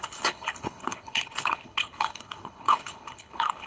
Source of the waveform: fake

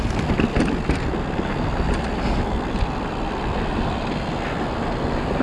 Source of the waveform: real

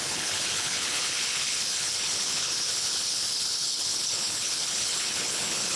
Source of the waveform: fake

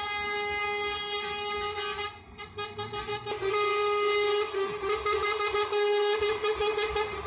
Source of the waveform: real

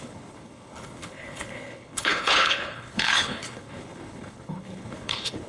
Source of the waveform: fake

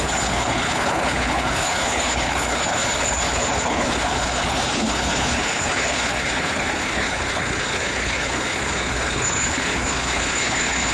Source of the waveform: fake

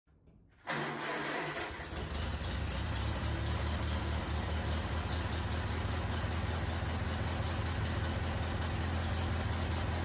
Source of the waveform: real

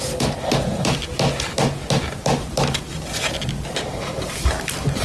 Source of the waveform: real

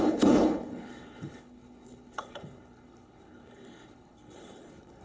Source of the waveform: fake